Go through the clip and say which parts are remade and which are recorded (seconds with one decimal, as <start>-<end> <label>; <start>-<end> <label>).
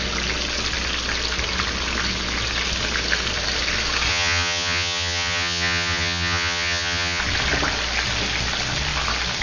0.0-4.1 recorded; 4.1-7.2 remade; 7.2-9.4 recorded